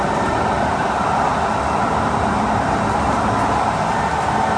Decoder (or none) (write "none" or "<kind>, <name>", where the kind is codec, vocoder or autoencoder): none